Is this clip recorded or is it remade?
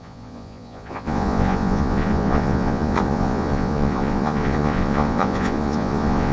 remade